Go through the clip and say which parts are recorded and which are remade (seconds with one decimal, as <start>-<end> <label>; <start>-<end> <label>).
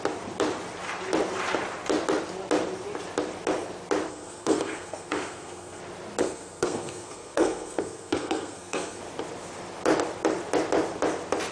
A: 0.0-4.1 recorded; 4.1-5.8 remade; 5.8-6.2 recorded; 6.2-9.0 remade; 9.0-11.5 recorded